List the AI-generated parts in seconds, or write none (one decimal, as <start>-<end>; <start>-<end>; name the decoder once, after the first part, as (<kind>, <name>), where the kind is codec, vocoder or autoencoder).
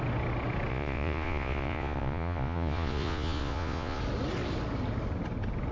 0.7-4.0 (vocoder, Vocos)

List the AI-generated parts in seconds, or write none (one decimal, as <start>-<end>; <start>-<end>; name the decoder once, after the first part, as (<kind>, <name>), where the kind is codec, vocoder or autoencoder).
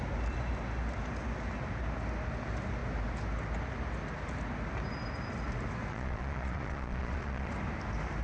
5.9-7.5 (vocoder, Vocos)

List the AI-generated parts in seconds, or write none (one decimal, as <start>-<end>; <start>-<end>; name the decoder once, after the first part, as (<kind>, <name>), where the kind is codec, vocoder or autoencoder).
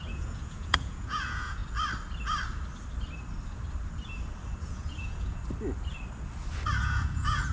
0.0-1.6 (vocoder, Vocos); 4.6-5.4; 6.8-7.5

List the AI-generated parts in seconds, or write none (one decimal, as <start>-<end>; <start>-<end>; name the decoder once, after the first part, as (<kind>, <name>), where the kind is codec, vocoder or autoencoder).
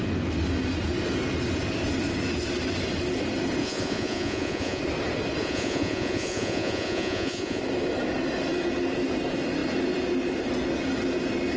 3.6-4.8 (vocoder, Vocos); 5.4-7.6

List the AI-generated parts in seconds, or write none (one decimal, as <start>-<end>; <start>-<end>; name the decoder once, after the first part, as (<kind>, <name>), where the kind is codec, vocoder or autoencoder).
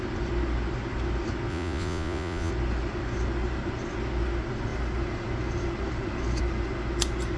1.5-2.5 (vocoder, Vocos)